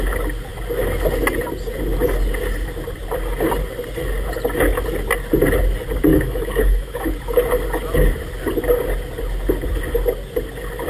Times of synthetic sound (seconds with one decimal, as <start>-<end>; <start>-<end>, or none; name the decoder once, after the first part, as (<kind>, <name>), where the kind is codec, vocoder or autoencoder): 6.1-7.1 (autoencoder, DAC-VAE)